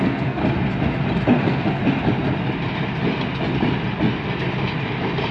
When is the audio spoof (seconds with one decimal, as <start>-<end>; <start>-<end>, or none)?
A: 0.0-0.4; 1.4-1.8